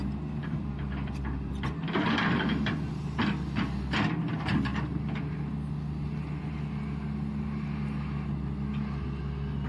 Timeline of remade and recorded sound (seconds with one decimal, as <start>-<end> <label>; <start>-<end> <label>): 0.0-0.4 recorded; 0.4-2.9 remade; 2.9-9.7 recorded